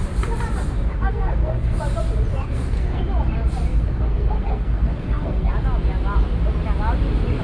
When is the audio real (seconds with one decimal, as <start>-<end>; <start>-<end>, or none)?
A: 0.0-0.9; 1.8-2.3; 3.0-3.7; 5.5-7.4